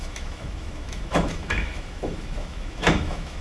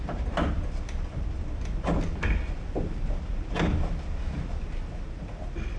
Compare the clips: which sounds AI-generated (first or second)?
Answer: first